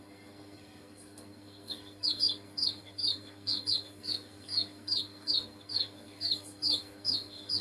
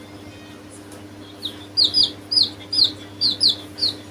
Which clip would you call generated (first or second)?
first